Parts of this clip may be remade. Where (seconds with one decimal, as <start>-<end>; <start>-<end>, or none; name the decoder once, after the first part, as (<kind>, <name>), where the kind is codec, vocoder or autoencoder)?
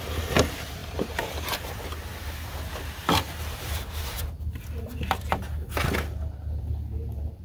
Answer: 0.8-1.7 (vocoder, BigVGAN v2)